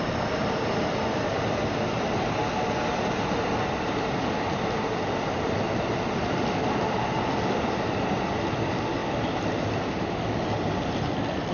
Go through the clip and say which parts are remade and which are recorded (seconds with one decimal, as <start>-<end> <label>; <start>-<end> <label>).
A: 0.0-11.5 recorded